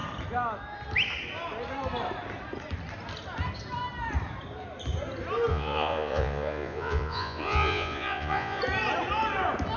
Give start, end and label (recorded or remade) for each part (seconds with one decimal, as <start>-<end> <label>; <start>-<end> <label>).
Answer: 0.0-5.5 recorded; 5.5-8.6 remade; 8.6-9.8 recorded